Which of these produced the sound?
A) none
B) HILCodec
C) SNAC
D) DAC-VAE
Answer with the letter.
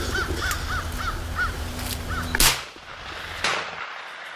A